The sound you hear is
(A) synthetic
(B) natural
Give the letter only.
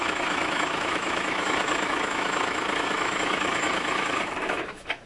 A